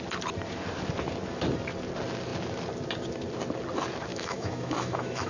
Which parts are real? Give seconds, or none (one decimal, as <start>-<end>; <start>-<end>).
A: 0.0-4.1